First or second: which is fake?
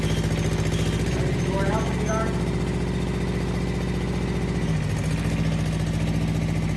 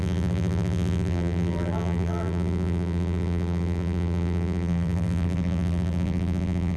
second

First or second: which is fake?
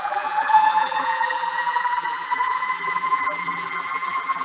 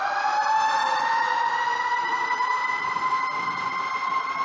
first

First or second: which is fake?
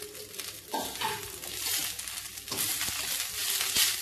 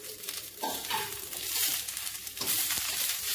second